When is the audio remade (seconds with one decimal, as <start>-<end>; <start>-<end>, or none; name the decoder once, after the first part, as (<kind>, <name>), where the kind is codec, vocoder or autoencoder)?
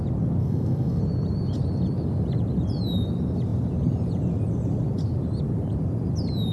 0.4-1.0 (codec, SNAC)